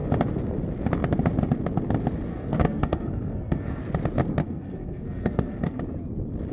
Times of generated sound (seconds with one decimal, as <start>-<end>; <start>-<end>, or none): 2.3-3.8; 4.4-5.8